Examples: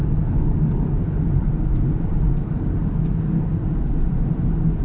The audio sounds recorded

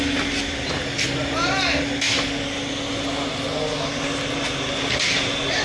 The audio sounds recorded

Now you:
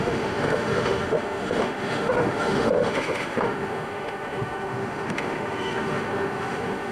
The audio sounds remade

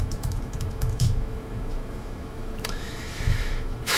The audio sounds remade